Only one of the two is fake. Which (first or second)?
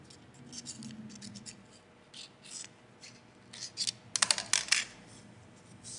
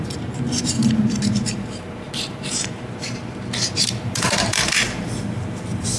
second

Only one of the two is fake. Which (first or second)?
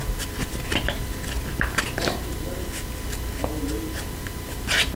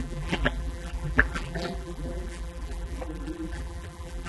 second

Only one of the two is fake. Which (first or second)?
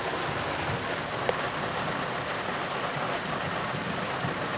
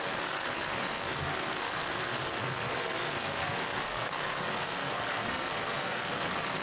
second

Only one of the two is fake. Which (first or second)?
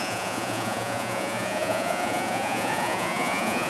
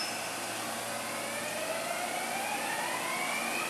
first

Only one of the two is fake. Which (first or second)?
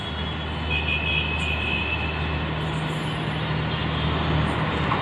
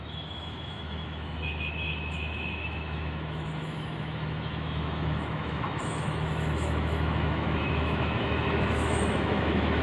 second